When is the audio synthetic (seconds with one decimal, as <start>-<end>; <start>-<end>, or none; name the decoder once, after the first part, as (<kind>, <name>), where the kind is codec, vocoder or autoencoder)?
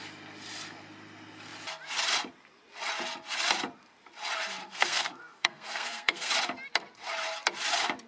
4.6-6.3 (codec, SNAC)